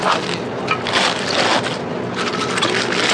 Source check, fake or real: real